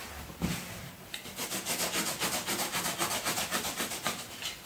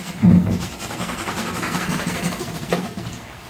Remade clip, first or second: second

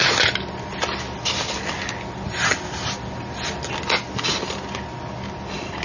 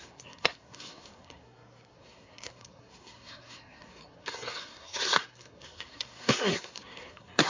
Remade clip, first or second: second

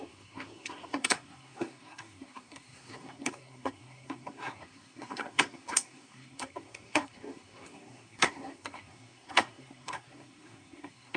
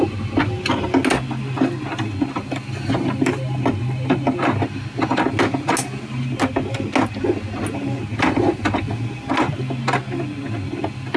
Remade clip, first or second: first